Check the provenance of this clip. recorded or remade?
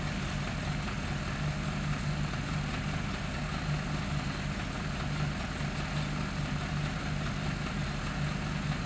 recorded